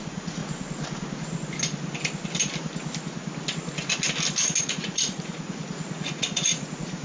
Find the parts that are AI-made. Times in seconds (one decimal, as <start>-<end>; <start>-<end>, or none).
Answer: 0.0-0.4; 4.6-7.0